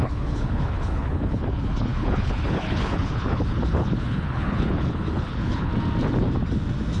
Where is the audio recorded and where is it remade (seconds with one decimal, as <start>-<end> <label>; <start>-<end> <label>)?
0.0-5.7 remade; 5.7-7.0 recorded